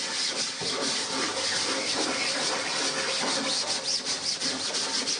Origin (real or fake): real